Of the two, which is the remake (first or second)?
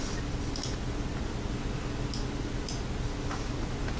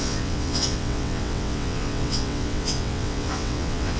second